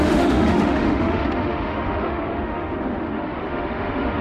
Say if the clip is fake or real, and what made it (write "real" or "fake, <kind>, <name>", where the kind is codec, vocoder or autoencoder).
fake, autoencoder, DAC-VAE